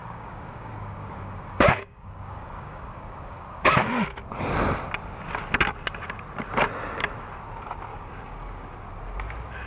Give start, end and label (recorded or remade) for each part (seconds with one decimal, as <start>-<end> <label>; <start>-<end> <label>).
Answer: 0.0-3.7 remade; 3.7-7.9 recorded; 7.9-8.7 remade; 8.7-9.7 recorded